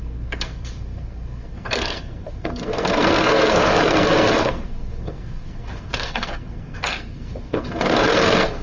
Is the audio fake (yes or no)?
yes